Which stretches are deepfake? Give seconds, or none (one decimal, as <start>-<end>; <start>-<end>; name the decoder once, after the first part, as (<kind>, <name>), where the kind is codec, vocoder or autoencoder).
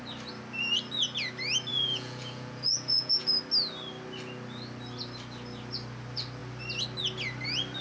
1.7-3.3 (vocoder, Vocos)